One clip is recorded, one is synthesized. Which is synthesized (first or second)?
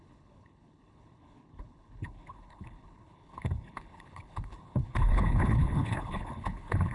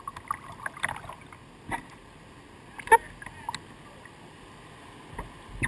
first